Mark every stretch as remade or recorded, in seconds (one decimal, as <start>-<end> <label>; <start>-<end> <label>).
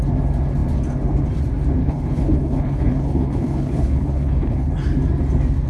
0.0-1.8 recorded; 1.8-4.7 remade; 4.7-5.7 recorded